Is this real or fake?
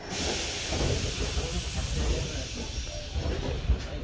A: real